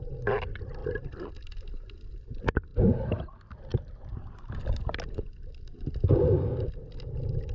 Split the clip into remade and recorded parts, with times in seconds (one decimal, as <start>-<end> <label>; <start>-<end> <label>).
0.0-2.7 recorded; 2.7-3.2 remade; 3.2-3.7 recorded; 3.7-4.3 remade; 4.3-7.5 recorded